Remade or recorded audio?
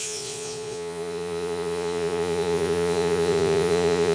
remade